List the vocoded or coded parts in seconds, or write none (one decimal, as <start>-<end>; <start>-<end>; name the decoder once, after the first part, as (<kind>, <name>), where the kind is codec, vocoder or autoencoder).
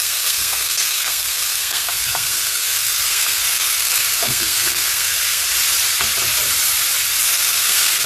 0.0-5.4 (codec, SNAC); 7.2-8.1